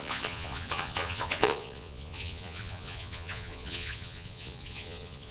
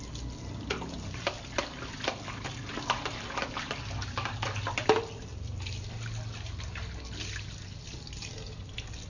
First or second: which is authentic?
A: second